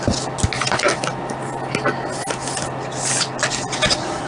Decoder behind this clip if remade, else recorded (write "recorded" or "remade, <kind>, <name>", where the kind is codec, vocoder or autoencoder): recorded